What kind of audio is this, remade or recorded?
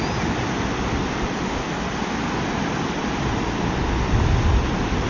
recorded